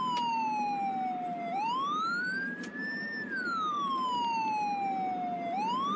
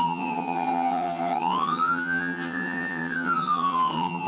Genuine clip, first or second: first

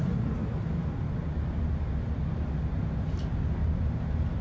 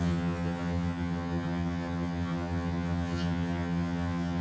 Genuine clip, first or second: first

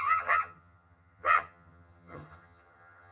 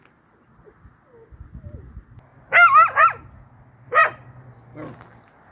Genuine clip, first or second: second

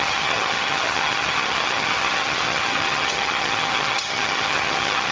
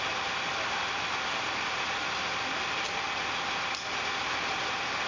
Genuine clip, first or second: second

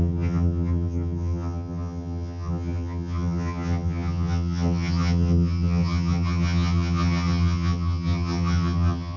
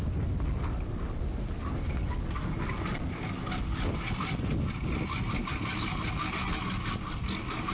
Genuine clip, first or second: second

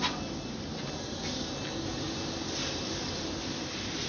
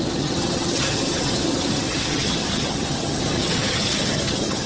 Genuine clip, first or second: first